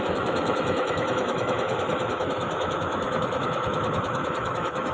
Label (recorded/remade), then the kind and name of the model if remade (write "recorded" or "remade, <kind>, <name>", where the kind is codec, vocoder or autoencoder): remade, autoencoder, DAC-VAE